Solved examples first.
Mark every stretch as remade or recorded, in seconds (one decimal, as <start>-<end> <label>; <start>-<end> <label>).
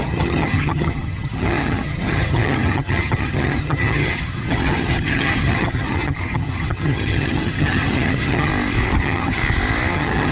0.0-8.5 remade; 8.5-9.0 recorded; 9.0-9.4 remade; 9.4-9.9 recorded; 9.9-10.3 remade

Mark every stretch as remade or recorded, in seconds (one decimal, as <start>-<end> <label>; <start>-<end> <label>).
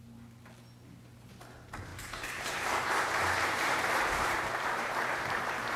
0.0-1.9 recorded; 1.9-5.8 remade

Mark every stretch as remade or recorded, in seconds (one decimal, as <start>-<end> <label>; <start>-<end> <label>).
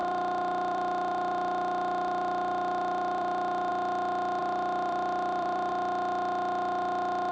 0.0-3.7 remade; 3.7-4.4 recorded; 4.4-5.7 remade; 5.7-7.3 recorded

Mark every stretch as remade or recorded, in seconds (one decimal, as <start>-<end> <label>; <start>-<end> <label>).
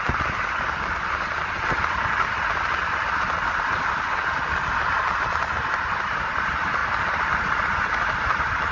0.0-8.7 recorded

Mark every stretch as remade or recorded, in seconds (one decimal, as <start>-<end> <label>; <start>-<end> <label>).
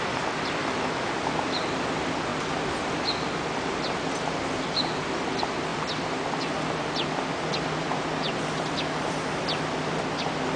0.0-0.6 recorded; 0.6-1.1 remade; 1.1-10.6 recorded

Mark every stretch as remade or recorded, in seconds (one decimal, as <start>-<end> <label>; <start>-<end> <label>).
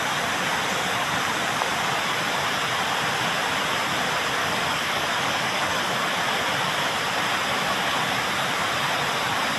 0.0-4.4 recorded; 4.4-5.8 remade; 5.8-9.6 recorded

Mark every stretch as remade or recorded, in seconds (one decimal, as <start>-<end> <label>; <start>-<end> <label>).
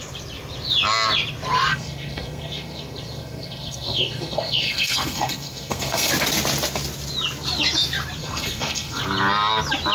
0.0-1.7 recorded; 1.7-6.1 remade; 6.1-8.2 recorded; 8.2-9.0 remade; 9.0-9.9 recorded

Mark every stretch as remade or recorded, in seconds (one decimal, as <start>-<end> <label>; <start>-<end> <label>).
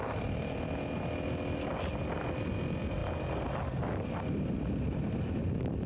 0.0-5.9 recorded